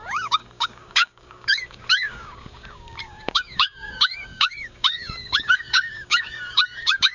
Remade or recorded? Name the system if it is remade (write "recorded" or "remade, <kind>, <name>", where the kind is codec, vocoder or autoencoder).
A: remade, codec, DAC